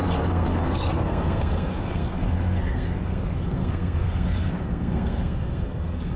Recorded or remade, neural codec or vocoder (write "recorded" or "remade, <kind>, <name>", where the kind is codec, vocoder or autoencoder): remade, codec, SNAC